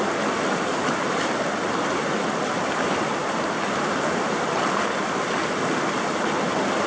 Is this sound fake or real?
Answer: real